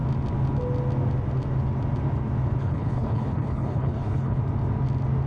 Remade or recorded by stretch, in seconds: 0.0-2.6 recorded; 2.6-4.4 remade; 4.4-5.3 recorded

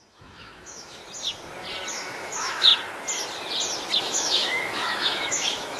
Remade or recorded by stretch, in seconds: 0.0-1.0 remade; 1.0-1.9 recorded; 1.9-2.7 remade; 2.7-4.0 recorded; 4.0-5.8 remade

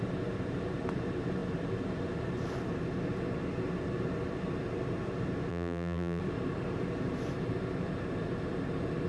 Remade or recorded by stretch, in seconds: 0.0-5.5 recorded; 5.5-6.2 remade; 6.2-9.1 recorded

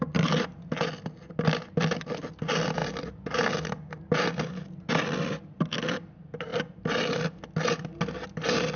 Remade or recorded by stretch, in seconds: 0.0-8.8 recorded

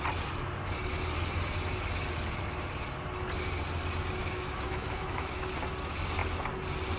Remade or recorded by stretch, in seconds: 0.0-4.2 recorded; 4.2-5.5 remade; 5.5-7.0 recorded